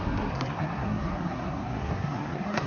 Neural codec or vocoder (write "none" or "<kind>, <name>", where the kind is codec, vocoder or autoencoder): codec, SNAC